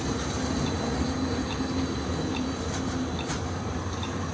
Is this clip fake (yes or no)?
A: yes